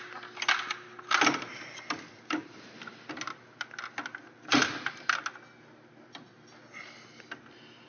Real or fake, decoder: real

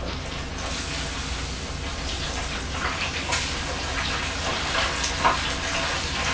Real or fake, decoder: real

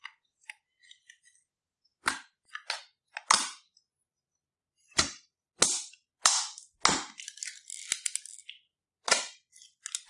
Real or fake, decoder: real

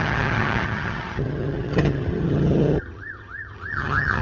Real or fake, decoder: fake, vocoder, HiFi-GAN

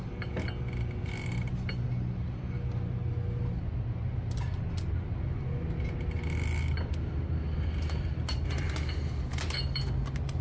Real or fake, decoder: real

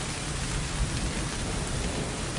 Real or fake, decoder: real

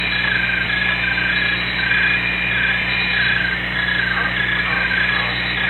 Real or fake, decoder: real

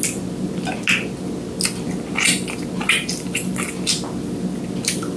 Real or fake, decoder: real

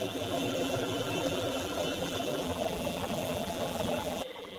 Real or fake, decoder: fake, vocoder, BigVGAN v2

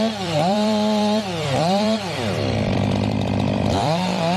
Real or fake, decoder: fake, vocoder, BigVGAN v2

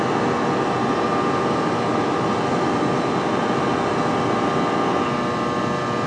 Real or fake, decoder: real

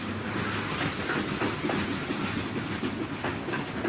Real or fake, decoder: real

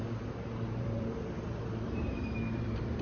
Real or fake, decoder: fake, vocoder, BigVGAN v2